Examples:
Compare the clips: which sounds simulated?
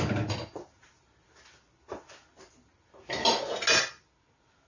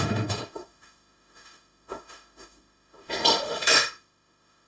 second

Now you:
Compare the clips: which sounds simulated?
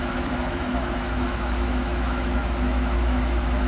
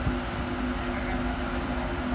first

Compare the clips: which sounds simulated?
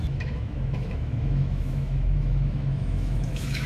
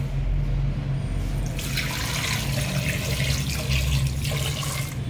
first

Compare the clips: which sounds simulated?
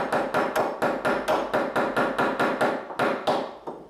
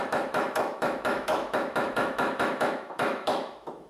second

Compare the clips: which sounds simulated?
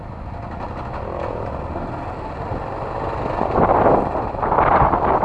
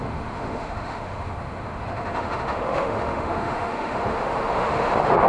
second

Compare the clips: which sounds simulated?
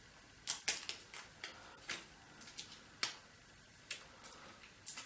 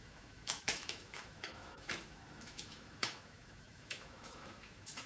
second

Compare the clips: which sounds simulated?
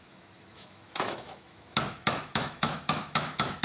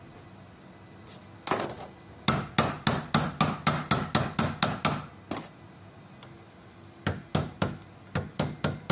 first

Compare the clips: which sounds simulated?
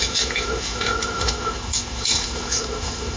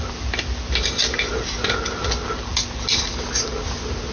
first